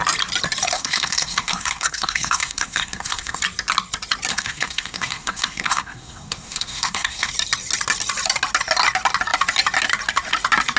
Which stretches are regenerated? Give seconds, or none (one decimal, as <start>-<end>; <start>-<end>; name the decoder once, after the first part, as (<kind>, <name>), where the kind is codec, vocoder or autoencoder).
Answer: 0.7-3.4 (codec, SNAC); 4.3-7.3